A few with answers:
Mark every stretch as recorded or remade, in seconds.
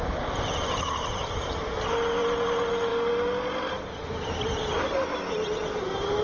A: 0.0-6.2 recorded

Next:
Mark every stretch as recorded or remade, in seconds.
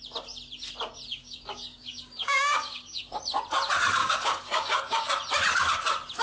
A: 0.0-1.1 recorded; 1.1-3.2 remade; 3.2-4.0 recorded; 4.0-5.1 remade; 5.1-6.2 recorded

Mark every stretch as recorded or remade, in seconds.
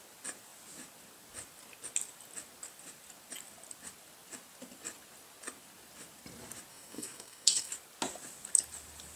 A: 0.0-6.7 recorded; 6.7-7.7 remade; 7.7-9.2 recorded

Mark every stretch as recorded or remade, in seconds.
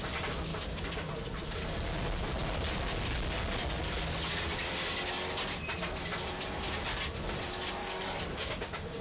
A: 0.0-0.5 recorded; 0.5-1.1 remade; 1.1-7.8 recorded; 7.8-9.0 remade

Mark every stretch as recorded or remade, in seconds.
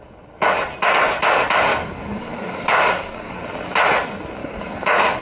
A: 0.0-1.7 recorded; 1.7-3.4 remade; 3.4-4.4 recorded; 4.4-5.2 remade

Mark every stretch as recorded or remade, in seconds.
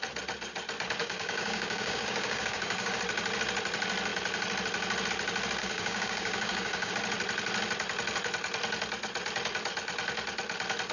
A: 0.0-1.0 recorded; 1.0-3.0 remade; 3.0-5.6 recorded; 5.6-6.9 remade; 6.9-10.9 recorded